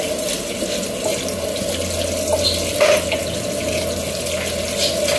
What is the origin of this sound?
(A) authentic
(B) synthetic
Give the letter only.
A